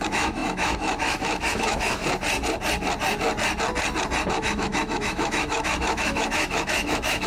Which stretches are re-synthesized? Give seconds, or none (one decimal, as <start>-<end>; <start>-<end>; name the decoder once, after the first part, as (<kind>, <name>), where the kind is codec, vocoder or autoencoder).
0.0-2.0 (autoencoder, DAC-VAE); 4.3-7.3